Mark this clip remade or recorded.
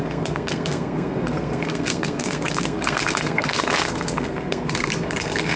remade